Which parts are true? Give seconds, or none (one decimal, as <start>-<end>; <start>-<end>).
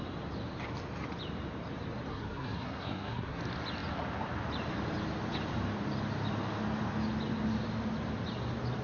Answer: 0.0-2.1; 3.4-8.8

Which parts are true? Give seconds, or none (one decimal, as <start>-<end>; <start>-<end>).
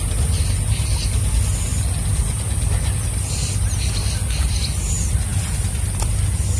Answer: 0.0-5.3; 5.9-6.6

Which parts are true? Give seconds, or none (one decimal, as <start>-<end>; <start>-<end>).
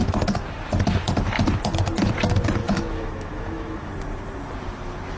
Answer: 0.0-2.6; 3.9-5.2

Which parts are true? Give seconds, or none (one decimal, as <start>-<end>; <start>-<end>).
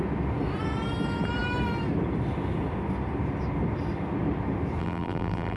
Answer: 0.0-4.8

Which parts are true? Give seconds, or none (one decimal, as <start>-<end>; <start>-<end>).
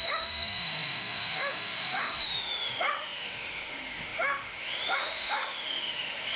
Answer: none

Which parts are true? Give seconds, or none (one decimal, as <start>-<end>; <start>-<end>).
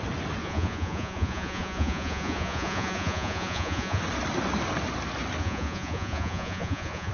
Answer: 0.0-0.4; 4.0-5.4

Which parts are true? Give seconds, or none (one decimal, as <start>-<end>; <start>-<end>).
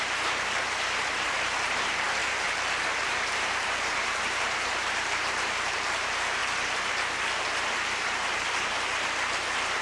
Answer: 6.4-6.9